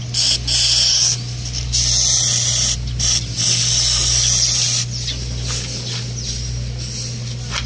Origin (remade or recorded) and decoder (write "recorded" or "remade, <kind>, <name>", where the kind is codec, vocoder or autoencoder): recorded